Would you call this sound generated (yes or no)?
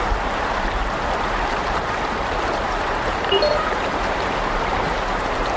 yes